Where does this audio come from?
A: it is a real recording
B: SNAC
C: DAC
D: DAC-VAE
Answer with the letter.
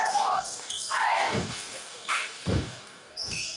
C